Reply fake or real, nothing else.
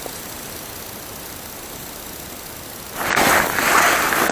real